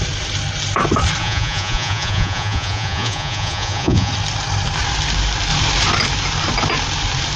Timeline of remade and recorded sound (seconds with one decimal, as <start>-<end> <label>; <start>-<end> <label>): 0.0-1.2 recorded; 1.2-4.1 remade; 4.1-7.4 recorded